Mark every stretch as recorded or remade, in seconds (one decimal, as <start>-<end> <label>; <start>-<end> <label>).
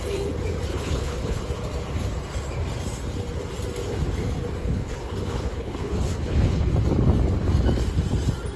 0.0-0.7 recorded; 0.7-1.4 remade; 1.4-4.6 recorded; 4.6-6.7 remade; 6.7-8.6 recorded